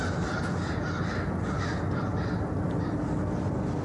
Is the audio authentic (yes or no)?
yes